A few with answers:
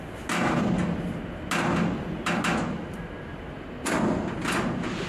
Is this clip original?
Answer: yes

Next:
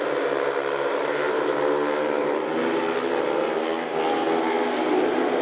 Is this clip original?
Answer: yes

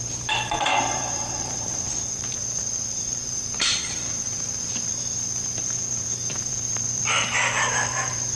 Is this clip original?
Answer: no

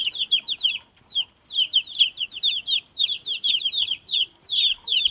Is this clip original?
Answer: yes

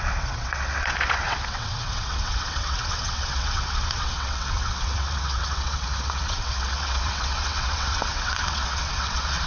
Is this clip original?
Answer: no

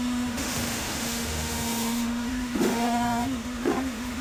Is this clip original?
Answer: no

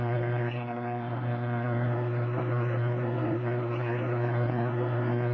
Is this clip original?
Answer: no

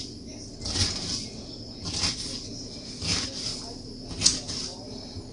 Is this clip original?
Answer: yes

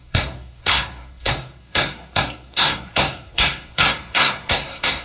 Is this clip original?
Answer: no